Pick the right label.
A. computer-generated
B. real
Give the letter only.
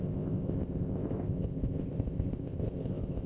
A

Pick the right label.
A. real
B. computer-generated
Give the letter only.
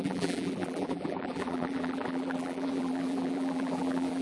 B